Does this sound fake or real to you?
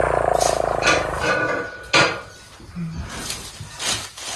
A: real